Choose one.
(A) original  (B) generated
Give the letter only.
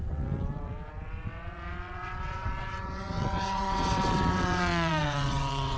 B